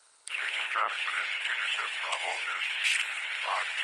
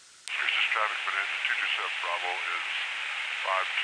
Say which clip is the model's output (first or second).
first